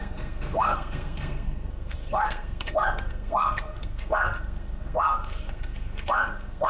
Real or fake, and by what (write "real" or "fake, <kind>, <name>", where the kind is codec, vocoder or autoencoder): fake, codec, SNAC